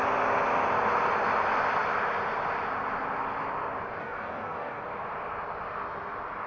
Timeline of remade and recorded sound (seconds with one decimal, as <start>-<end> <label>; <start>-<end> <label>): 0.0-4.0 recorded; 4.0-4.8 remade; 4.8-6.5 recorded